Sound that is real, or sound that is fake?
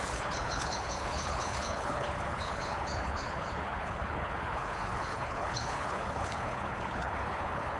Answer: fake